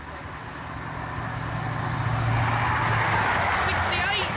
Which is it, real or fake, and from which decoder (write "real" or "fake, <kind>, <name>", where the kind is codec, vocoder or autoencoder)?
real